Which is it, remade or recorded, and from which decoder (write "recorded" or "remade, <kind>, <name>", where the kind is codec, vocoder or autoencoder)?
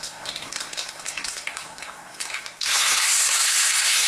remade, codec, SNAC